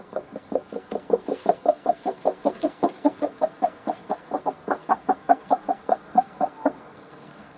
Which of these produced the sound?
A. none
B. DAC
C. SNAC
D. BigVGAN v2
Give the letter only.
C